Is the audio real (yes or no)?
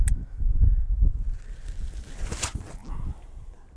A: yes